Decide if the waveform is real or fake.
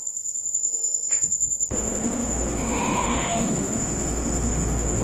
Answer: fake